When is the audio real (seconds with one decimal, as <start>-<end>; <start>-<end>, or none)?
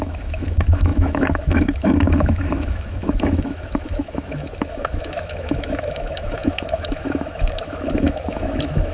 none